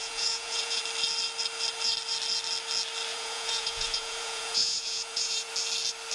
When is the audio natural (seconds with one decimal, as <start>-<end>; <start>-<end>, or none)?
0.8-3.1; 5.5-6.1